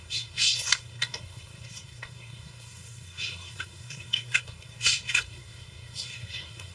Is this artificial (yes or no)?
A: yes